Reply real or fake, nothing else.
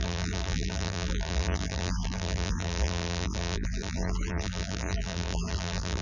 fake